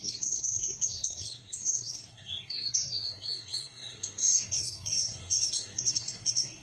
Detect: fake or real fake